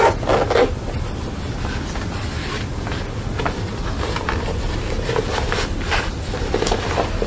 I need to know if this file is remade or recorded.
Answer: recorded